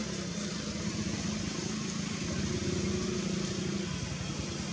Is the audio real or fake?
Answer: real